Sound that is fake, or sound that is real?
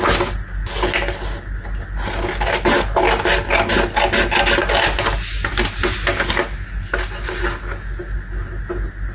real